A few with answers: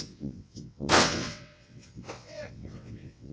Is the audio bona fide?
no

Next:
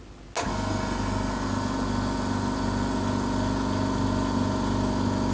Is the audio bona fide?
yes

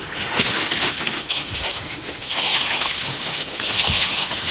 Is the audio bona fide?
no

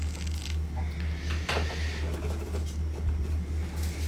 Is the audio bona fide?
yes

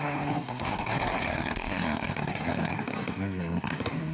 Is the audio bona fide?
no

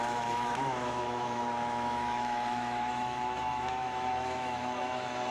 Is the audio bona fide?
no